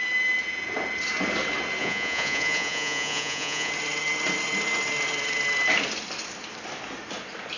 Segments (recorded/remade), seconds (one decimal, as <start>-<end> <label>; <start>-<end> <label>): 0.0-1.8 recorded; 1.8-3.7 remade; 3.7-7.6 recorded